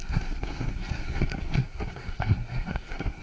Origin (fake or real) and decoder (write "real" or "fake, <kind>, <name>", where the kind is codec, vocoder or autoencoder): fake, codec, SNAC